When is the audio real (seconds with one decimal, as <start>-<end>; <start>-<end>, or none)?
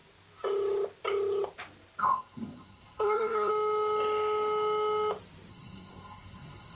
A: 0.0-2.0; 3.5-5.5